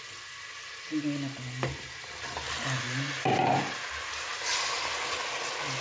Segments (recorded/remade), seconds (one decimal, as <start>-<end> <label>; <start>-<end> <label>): 0.0-5.8 recorded